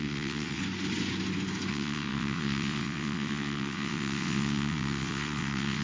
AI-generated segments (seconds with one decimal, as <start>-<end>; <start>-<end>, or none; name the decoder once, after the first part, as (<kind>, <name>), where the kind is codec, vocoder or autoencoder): 0.0-0.6 (vocoder, WaveNeXt); 1.7-5.8